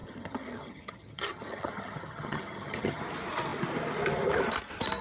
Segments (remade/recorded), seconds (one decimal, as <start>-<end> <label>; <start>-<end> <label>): 0.0-3.0 remade; 3.0-5.0 recorded